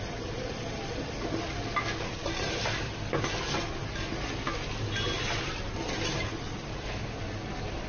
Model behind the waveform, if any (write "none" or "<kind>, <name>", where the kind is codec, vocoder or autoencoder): none